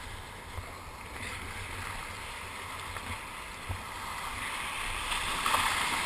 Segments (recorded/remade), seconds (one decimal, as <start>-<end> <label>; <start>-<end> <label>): 0.0-6.1 recorded